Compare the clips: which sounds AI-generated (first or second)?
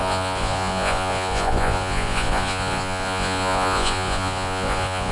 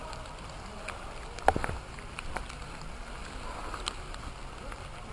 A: first